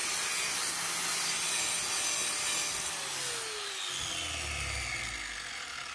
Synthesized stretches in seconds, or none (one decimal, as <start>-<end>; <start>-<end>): none